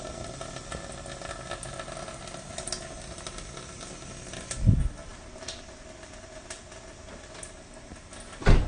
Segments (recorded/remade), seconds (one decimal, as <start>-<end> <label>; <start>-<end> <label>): 0.0-8.7 recorded